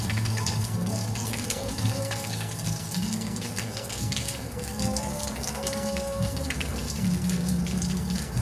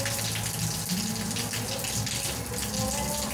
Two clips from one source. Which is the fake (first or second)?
first